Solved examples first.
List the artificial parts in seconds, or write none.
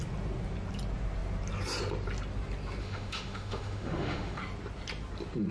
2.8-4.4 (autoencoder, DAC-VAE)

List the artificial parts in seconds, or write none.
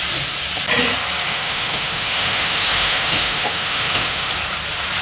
1.3-4.3 (autoencoder, DAC-VAE)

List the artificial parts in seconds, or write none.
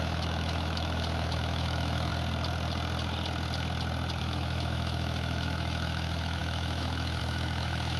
0.0-2.1 (autoencoder, DAC-VAE); 4.2-8.0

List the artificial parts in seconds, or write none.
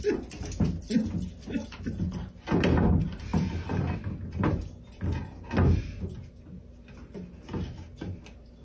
none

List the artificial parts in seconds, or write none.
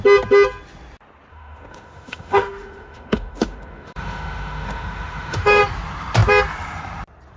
1.3-5.6 (autoencoder, DAC-VAE)